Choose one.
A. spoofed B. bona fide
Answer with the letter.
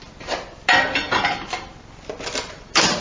B